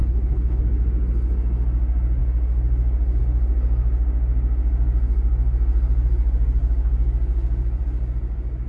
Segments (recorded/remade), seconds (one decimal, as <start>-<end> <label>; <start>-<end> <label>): 0.0-0.6 remade; 0.6-8.7 recorded

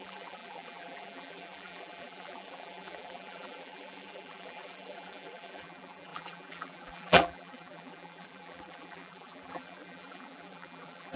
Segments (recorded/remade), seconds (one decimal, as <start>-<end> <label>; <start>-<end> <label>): 0.0-11.2 remade

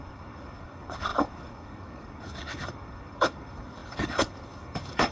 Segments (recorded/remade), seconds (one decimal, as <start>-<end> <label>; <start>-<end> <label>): 0.0-5.1 remade

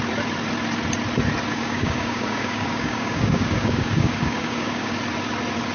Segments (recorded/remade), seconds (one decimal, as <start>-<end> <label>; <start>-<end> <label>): 0.0-1.5 recorded; 1.5-4.9 remade; 4.9-5.7 recorded

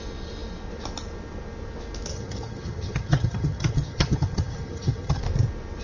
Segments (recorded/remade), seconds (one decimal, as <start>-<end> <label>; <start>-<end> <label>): 0.0-2.1 recorded; 2.1-5.2 remade; 5.2-5.8 recorded

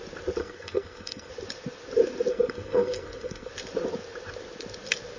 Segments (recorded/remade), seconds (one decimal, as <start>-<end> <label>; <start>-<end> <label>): 0.0-0.4 recorded; 0.4-1.3 remade; 1.3-2.3 recorded; 2.3-3.5 remade; 3.5-5.2 recorded

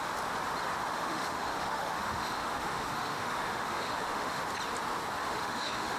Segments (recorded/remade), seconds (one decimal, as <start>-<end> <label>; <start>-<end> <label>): 0.0-0.8 recorded; 0.8-4.4 remade; 4.4-5.2 recorded; 5.2-6.0 remade